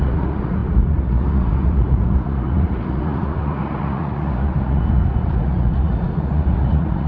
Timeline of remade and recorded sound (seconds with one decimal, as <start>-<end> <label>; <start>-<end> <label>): 0.0-7.1 remade